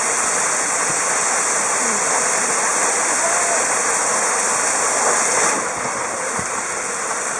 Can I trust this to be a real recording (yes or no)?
yes